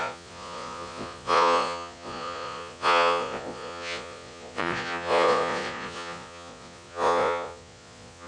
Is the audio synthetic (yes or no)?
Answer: yes